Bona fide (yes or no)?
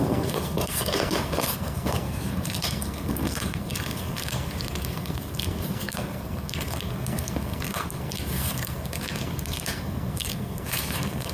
no